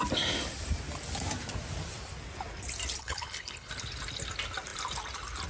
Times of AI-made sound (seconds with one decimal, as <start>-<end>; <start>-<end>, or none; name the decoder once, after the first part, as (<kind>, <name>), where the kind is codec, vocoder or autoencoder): 3.0-3.7 (codec, HILCodec)